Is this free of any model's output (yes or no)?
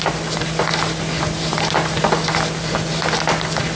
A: yes